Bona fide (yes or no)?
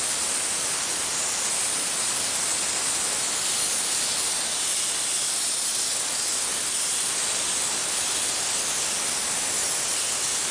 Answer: yes